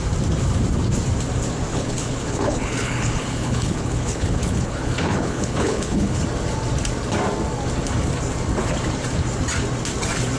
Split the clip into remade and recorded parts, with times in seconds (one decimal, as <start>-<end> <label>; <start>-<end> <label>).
0.0-1.7 recorded; 1.7-6.2 remade; 6.2-10.4 recorded